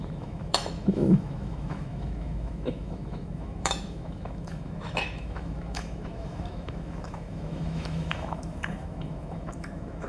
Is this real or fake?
fake